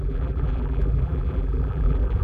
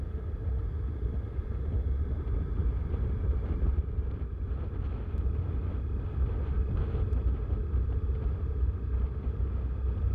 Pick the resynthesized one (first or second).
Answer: first